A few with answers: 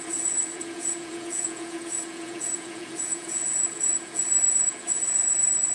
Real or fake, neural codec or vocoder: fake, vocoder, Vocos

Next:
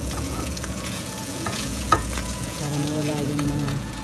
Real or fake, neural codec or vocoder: fake, vocoder, Vocos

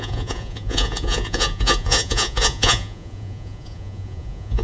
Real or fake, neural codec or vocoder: fake, vocoder, Vocos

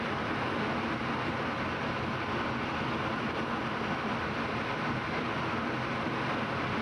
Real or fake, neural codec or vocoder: real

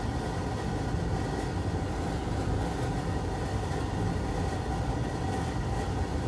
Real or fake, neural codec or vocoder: real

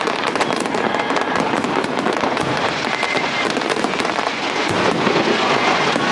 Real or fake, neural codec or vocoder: fake, vocoder, Vocos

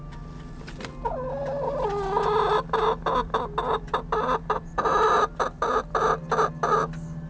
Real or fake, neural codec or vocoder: real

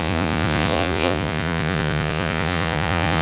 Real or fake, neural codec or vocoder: fake, vocoder, Vocos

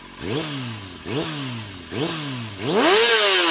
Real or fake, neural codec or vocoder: real